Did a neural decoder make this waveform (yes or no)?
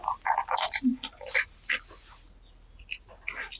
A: no